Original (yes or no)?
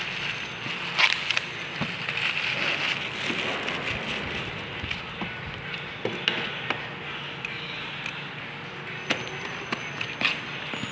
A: yes